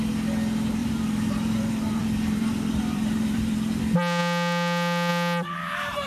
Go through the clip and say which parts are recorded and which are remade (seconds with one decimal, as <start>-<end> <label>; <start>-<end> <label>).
0.0-0.8 recorded; 0.8-3.8 remade; 3.8-6.1 recorded